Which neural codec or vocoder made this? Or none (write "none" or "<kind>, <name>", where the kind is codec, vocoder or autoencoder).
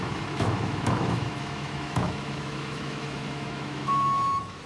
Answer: autoencoder, DAC-VAE